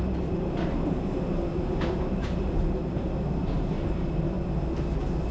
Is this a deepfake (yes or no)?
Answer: no